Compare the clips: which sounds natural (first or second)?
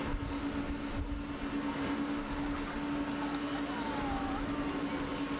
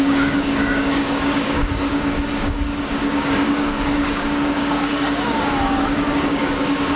first